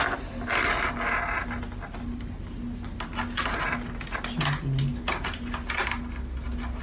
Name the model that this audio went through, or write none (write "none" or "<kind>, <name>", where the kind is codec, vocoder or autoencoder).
none